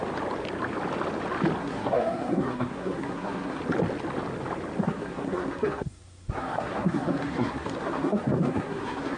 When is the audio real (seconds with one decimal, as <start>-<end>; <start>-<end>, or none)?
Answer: 0.0-1.6; 3.6-4.8